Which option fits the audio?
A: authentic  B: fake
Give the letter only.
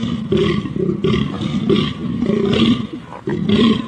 A